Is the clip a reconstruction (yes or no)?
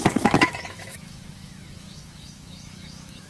yes